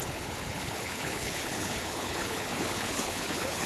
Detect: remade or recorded remade